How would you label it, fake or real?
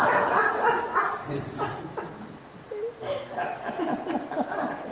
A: real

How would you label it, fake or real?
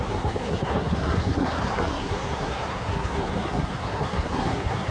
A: fake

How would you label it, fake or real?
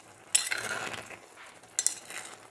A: real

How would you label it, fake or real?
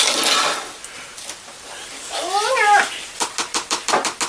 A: real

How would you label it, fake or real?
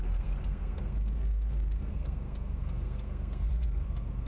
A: fake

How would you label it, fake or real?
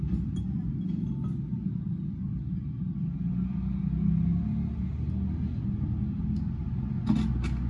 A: real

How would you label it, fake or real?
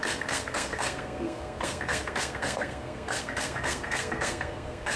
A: fake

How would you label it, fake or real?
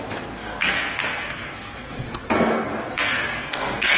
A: fake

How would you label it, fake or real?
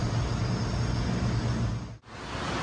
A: real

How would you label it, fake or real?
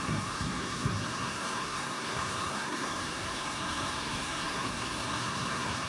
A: fake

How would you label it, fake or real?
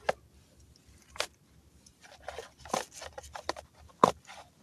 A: real